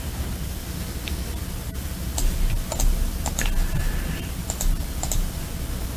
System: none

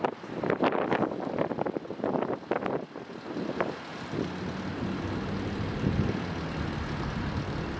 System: none